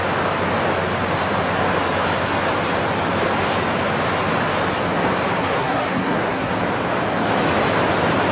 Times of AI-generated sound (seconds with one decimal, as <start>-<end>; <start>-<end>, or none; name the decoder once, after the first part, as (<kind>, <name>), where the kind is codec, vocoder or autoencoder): 5.4-6.5 (codec, SNAC)